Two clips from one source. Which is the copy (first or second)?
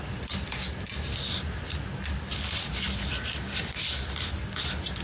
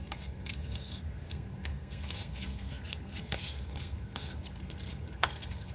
second